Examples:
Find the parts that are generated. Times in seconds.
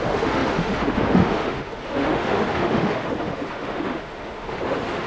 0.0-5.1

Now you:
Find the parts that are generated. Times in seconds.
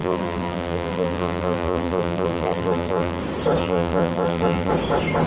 0.0-3.2; 3.6-4.7